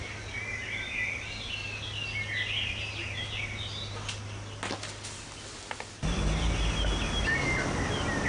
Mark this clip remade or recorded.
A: recorded